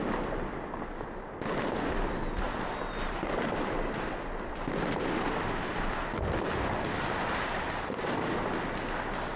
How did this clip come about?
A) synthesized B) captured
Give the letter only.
B